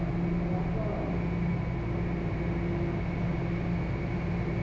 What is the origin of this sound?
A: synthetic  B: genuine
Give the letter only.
B